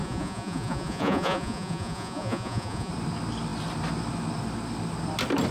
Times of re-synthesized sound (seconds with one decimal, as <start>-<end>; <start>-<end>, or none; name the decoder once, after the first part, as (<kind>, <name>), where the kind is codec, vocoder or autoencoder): 0.0-2.9 (vocoder, Vocos)